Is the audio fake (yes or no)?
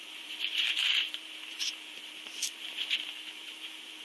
yes